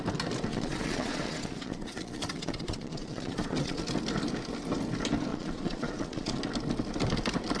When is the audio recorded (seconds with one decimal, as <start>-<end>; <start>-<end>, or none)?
0.0-0.5; 3.8-5.3; 6.4-7.6